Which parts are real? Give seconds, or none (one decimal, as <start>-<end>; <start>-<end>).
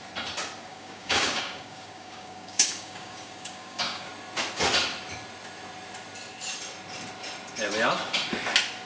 0.0-0.7; 4.1-8.9